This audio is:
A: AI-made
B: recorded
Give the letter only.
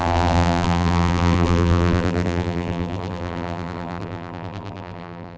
A